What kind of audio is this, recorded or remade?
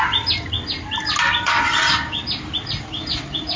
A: recorded